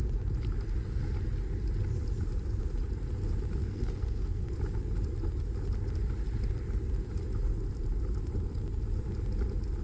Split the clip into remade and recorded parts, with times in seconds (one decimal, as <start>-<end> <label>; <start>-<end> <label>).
0.0-3.6 recorded; 3.6-4.5 remade; 4.5-9.8 recorded